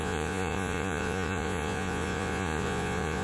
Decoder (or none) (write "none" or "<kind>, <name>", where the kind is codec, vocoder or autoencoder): vocoder, Vocos